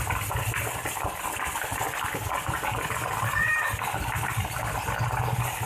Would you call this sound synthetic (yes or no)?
no